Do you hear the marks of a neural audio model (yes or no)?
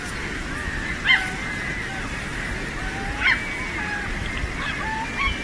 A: no